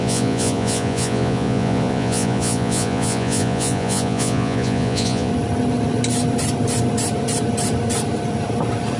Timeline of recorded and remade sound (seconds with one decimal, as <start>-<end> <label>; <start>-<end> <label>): 0.0-5.3 remade; 5.3-9.0 recorded